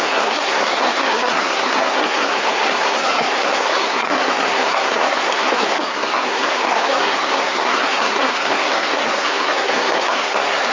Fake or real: fake